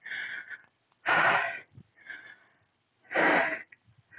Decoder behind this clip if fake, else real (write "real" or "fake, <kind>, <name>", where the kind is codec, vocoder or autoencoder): fake, vocoder, BigVGAN v2